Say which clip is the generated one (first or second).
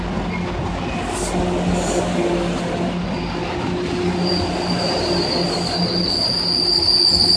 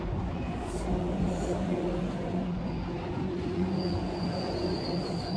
second